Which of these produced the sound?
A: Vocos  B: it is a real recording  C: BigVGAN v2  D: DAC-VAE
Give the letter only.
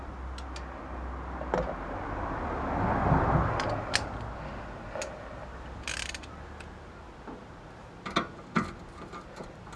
B